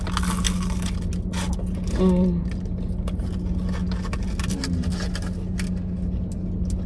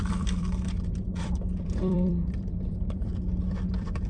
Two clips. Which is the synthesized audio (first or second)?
second